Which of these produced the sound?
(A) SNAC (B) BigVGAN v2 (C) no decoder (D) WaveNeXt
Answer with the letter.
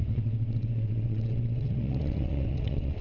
D